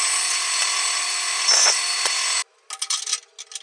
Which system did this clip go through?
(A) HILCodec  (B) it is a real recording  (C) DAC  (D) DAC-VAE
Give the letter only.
B